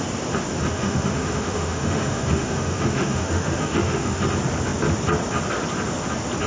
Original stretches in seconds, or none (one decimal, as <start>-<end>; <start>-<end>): 0.0-0.7; 4.2-6.5